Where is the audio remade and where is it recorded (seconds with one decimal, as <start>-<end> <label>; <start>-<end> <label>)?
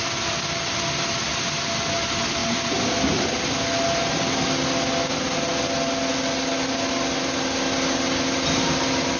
0.0-9.2 recorded